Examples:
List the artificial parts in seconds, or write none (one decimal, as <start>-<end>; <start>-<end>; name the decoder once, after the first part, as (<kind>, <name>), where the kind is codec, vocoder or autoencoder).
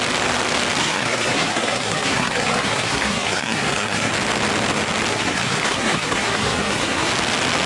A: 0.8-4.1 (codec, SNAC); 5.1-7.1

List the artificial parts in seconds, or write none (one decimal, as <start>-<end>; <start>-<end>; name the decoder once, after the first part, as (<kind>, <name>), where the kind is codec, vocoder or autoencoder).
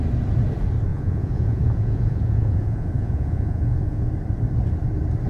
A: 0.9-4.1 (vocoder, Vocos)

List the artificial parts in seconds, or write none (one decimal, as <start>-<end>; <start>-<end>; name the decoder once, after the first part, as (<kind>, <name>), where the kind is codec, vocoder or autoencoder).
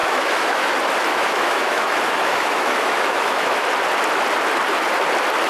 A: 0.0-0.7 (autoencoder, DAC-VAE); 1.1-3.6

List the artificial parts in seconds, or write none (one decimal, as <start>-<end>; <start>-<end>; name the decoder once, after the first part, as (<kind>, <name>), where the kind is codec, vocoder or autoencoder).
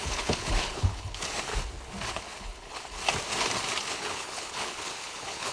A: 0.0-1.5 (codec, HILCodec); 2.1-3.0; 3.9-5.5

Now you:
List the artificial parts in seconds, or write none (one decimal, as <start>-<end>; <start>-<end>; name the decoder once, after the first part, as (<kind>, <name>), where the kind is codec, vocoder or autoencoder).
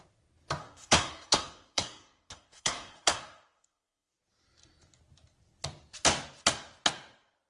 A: 0.6-4.1 (codec, SNAC)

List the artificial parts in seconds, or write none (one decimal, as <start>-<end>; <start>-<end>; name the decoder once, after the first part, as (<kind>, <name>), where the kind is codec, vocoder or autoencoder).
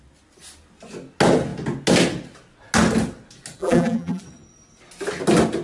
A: 3.6-4.2 (vocoder, BigVGAN v2)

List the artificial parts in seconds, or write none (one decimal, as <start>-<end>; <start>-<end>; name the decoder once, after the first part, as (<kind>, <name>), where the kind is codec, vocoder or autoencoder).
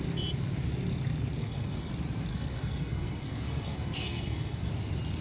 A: 1.4-1.9 (codec, SNAC); 2.3-4.7